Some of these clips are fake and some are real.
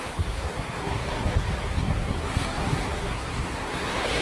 fake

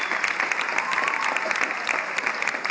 real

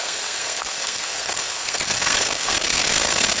fake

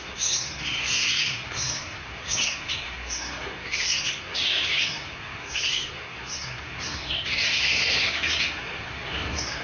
fake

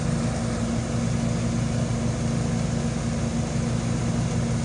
real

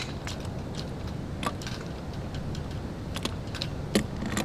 real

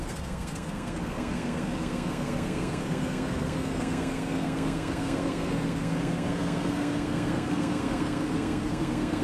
fake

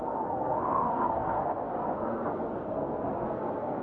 fake